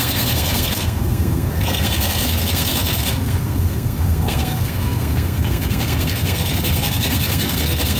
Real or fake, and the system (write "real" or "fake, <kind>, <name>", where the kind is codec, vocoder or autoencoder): fake, codec, SNAC